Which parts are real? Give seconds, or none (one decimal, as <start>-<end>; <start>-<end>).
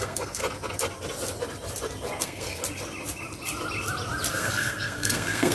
0.4-2.2; 2.6-4.3